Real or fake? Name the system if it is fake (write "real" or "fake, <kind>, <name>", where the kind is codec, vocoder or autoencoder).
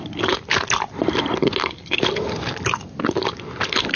real